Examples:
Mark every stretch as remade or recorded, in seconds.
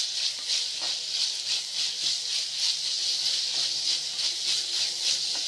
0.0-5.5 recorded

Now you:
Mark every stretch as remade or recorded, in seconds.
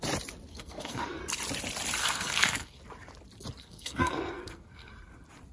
0.0-0.5 recorded; 0.5-1.2 remade; 1.2-2.0 recorded; 2.0-2.8 remade; 2.8-3.6 recorded; 3.6-4.9 remade; 4.9-5.5 recorded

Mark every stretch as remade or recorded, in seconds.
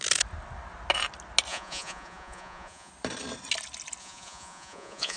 0.0-1.5 recorded; 1.5-2.9 remade; 2.9-4.0 recorded; 4.0-5.2 remade